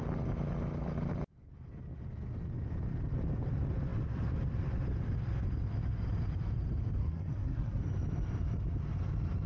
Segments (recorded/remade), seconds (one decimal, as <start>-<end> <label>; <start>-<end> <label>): 0.0-7.0 recorded; 7.0-7.8 remade; 7.8-9.5 recorded